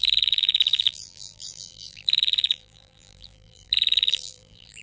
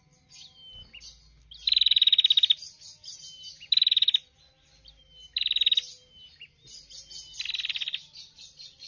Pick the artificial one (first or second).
first